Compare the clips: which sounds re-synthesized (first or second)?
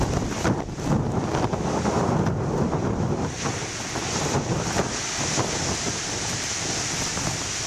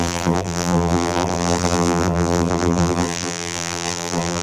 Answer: second